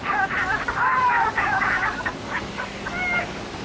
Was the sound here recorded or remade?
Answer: remade